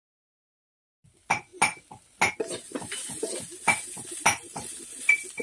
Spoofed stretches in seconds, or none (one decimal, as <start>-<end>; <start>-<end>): none